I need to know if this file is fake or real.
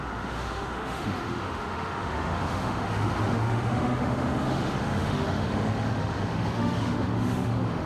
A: fake